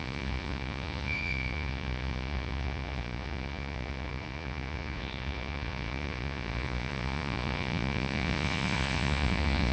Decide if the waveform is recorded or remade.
remade